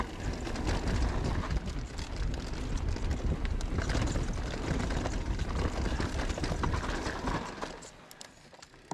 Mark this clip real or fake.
real